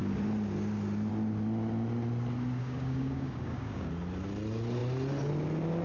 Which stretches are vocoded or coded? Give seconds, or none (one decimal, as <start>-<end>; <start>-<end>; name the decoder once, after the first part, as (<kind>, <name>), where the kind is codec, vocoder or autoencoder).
2.6-3.9 (codec, DAC)